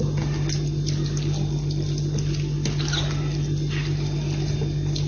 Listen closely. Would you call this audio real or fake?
real